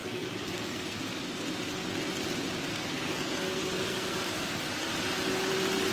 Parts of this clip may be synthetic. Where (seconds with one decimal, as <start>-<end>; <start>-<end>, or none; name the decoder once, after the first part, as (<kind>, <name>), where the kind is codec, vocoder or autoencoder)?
0.0-1.0 (codec, SNAC); 2.7-4.6